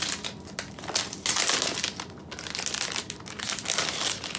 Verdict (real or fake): real